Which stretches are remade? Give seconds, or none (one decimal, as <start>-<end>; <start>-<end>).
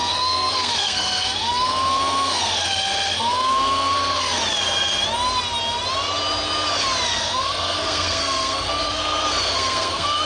0.0-4.4; 7.2-10.3